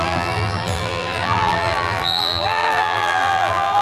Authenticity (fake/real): fake